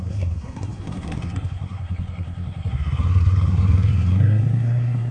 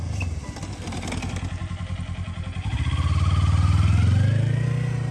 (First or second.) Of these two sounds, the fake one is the first